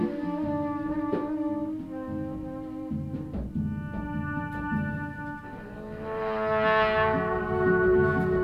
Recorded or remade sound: recorded